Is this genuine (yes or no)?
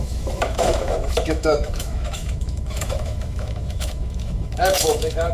no